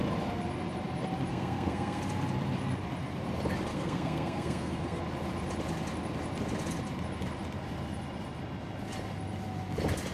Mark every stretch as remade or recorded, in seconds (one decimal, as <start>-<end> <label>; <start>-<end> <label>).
0.0-1.3 recorded; 1.3-2.0 remade; 2.0-3.7 recorded; 3.7-5.0 remade; 5.0-10.1 recorded